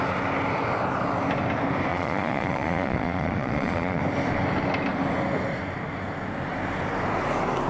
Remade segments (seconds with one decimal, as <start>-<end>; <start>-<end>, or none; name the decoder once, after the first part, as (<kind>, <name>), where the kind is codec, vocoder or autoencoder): 1.9-4.0 (vocoder, Vocos)